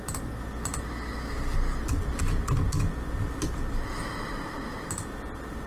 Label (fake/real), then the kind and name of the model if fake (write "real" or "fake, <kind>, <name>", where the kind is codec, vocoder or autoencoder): real